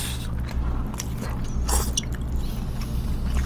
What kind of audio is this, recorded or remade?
recorded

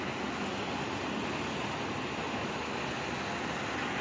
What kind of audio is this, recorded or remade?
recorded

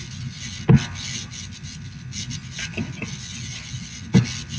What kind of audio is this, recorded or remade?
recorded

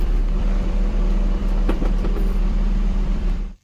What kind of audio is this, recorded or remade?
remade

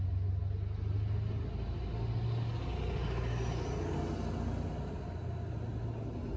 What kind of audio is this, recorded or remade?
recorded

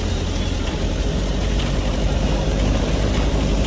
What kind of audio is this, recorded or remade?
remade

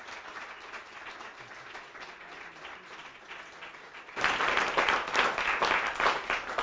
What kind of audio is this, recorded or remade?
recorded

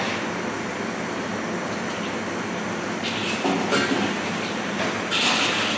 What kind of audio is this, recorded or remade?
recorded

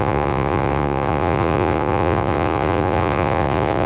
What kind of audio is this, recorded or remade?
remade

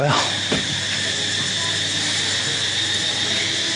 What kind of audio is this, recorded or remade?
recorded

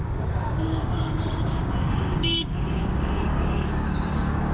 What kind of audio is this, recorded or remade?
remade